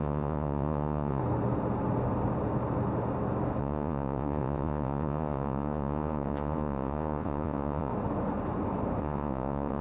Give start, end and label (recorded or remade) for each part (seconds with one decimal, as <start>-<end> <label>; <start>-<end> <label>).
0.0-1.2 remade; 1.2-3.6 recorded; 3.6-7.9 remade; 7.9-9.0 recorded; 9.0-9.8 remade